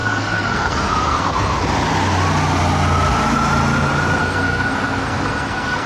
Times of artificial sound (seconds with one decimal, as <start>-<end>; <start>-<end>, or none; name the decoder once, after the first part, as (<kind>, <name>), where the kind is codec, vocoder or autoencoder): 0.0-1.6 (codec, SNAC); 4.2-5.9